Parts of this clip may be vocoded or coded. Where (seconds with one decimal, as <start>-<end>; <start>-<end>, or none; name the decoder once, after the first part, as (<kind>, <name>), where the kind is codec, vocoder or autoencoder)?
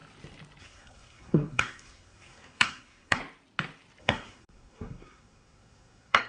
0.6-3.2 (codec, SNAC); 4.0-6.3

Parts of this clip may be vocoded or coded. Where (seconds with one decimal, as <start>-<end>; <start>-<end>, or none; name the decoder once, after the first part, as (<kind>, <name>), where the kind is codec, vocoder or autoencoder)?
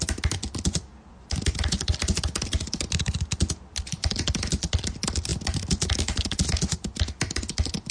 none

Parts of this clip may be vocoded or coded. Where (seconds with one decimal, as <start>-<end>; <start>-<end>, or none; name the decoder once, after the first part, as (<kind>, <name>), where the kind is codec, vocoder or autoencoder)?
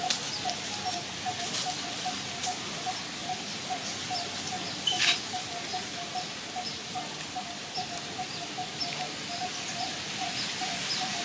none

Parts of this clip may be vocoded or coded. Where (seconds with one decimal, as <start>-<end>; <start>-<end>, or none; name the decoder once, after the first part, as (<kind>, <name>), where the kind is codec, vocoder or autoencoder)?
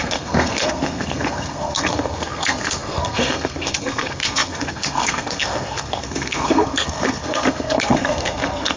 0.0-8.8 (codec, SNAC)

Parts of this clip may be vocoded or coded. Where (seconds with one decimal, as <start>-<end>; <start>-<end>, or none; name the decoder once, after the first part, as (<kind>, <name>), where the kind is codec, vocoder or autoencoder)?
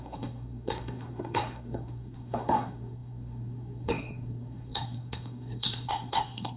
0.0-6.6 (codec, SNAC)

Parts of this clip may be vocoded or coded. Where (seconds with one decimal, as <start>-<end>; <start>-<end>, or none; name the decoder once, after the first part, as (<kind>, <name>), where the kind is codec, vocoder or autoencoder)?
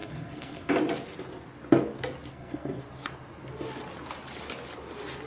0.0-0.7 (codec, SNAC); 2.3-2.8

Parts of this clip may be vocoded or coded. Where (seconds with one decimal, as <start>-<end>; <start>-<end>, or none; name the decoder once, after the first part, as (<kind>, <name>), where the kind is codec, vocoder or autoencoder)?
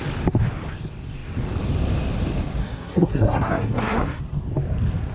2.6-4.2 (codec, SNAC)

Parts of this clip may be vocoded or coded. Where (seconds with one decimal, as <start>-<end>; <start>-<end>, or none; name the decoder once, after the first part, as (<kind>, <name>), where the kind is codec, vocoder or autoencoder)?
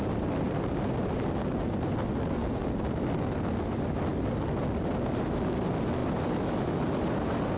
none